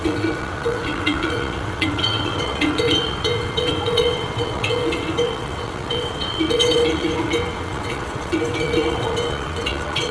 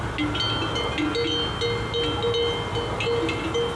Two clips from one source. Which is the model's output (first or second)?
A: first